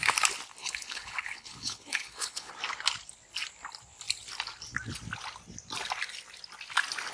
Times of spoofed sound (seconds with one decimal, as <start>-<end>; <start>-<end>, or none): 0.6-2.5